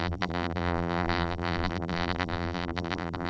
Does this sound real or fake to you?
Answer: fake